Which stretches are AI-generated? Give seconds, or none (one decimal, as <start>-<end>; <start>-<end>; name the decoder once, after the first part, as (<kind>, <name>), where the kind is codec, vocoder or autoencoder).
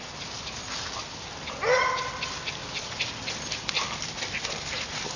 none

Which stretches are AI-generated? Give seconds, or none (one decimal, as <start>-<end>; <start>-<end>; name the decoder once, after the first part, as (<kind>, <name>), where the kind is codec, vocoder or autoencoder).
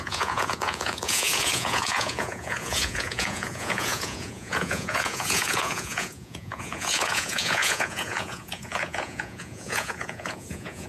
0.0-10.9 (vocoder, Vocos)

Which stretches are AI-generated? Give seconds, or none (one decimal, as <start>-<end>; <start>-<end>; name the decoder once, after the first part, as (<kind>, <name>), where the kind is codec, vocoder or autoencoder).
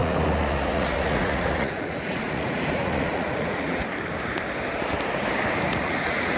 0.0-3.8 (vocoder, Vocos); 5.7-6.4